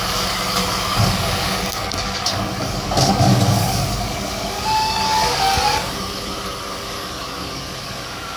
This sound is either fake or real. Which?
fake